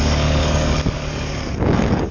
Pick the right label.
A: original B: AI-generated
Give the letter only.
B